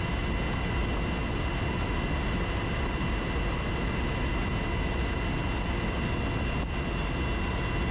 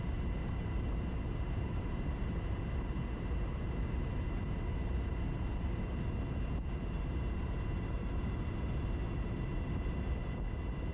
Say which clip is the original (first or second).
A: first